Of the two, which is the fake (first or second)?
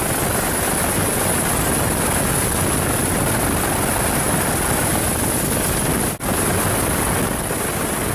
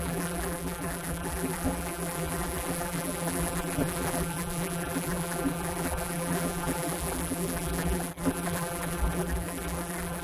second